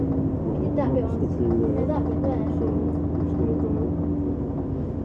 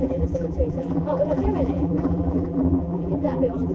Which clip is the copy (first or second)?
second